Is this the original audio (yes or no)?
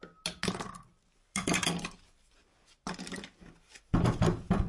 yes